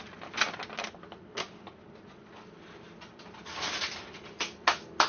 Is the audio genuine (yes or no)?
yes